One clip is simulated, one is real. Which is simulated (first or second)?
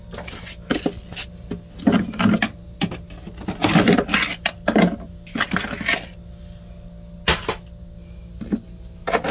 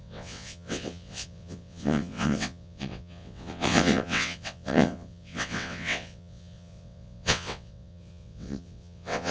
second